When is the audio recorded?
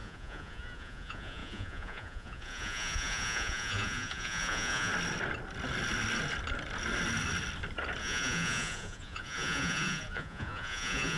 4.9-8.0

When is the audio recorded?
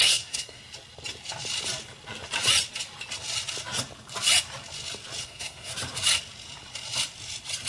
0.6-5.2; 5.7-7.7